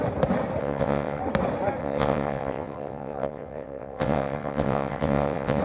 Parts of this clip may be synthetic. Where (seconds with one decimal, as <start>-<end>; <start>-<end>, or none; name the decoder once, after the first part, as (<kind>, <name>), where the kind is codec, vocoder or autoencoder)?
0.6-1.2 (vocoder, WaveNeXt); 1.8-5.6